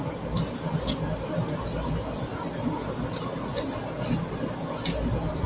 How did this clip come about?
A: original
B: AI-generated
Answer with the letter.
A